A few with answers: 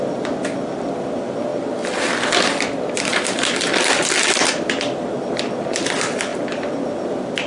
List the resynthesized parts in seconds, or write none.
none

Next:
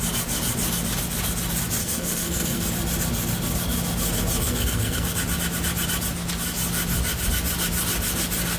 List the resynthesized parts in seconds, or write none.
1.8-2.7; 4.4-5.2

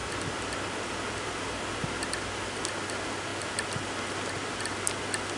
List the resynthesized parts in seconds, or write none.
none

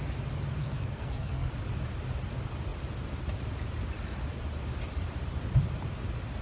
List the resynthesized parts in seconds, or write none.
0.6-1.5

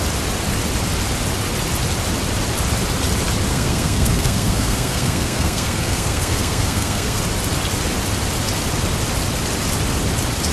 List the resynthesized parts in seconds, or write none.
3.5-7.2

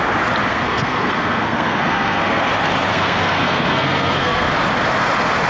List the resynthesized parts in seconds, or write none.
0.5-2.5; 2.9-4.5

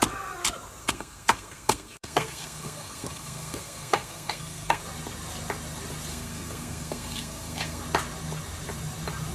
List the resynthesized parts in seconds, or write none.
0.8-4.8; 6.1-7.8

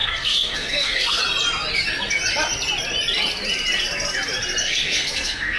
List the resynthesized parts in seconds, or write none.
0.0-1.2; 4.6-5.6